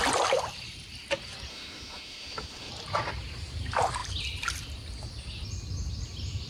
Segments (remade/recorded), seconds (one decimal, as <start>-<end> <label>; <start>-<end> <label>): 0.0-1.5 recorded; 1.5-2.7 remade; 2.7-6.5 recorded

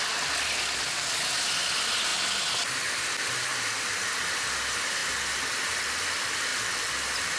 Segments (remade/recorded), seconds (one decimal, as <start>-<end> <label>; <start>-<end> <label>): 0.0-7.4 recorded

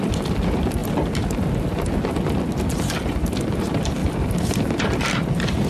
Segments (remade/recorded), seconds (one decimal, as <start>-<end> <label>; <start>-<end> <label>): 0.0-4.0 recorded; 4.0-5.0 remade; 5.0-5.7 recorded

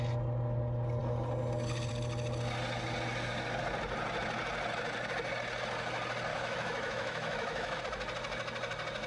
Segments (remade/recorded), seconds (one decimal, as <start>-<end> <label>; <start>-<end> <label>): 0.0-6.3 recorded; 6.3-7.8 remade; 7.8-9.1 recorded

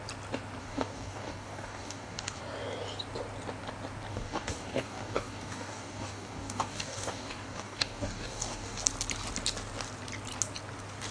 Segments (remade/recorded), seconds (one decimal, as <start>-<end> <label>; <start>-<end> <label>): 0.0-0.6 recorded; 0.6-2.4 remade; 2.4-4.1 recorded; 4.1-8.8 remade; 8.8-11.1 recorded

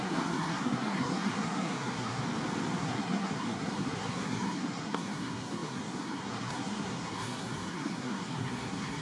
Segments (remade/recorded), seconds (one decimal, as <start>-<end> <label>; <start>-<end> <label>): 0.0-2.2 remade; 2.2-2.8 recorded; 2.8-9.0 remade

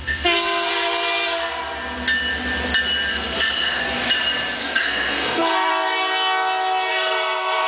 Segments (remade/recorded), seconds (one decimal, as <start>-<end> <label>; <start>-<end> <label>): 0.0-0.7 remade; 0.7-3.1 recorded; 3.1-3.8 remade; 3.8-4.6 recorded; 4.6-5.7 remade; 5.7-6.9 recorded; 6.9-7.7 remade